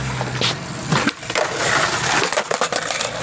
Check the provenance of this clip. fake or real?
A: real